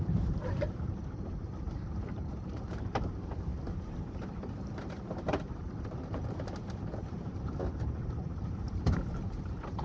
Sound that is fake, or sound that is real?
fake